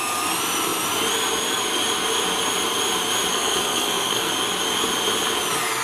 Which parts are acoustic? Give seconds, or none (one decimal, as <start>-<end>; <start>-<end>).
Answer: 0.0-3.3; 4.3-5.8